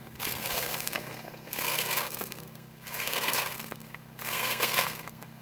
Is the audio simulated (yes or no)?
yes